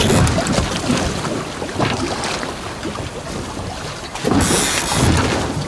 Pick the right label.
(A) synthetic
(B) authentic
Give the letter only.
B